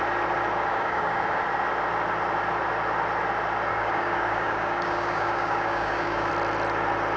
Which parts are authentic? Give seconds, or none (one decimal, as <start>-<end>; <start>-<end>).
0.0-0.7; 1.4-3.7; 6.3-7.2